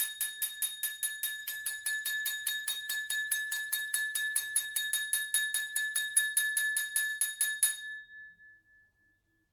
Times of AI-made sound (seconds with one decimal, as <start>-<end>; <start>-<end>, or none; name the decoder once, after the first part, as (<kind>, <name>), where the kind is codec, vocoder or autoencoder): 1.4-4.9 (autoencoder, DAC-VAE); 5.6-6.2